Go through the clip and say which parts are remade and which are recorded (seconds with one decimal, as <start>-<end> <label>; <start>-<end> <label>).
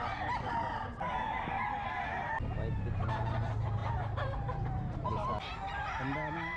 0.0-3.8 recorded; 3.8-5.1 remade; 5.1-6.6 recorded